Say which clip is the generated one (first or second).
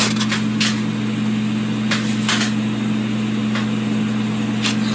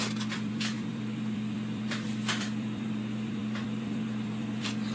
second